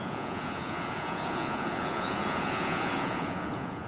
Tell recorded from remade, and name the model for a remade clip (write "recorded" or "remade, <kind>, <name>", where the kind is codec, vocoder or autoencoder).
remade, vocoder, Vocos